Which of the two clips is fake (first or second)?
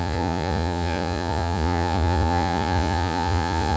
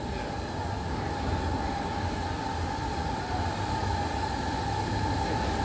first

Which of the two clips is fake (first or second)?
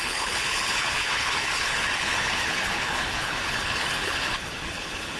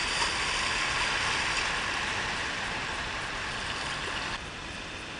first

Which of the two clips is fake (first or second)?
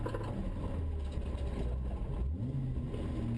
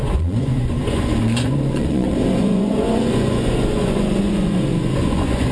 second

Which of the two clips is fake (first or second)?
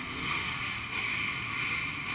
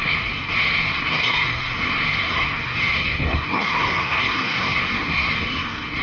second